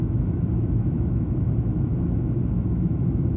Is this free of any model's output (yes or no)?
no